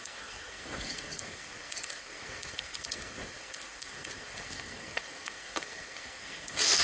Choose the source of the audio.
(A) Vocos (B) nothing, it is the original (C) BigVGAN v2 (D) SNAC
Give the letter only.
D